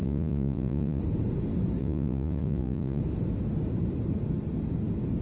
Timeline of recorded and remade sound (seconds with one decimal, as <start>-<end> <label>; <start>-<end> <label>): 0.0-1.0 remade; 1.0-1.8 recorded; 1.8-3.0 remade; 3.0-5.2 recorded